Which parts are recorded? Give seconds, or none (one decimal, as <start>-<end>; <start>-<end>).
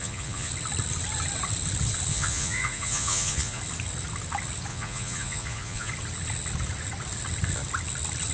0.5-2.1; 3.6-4.7; 5.9-8.3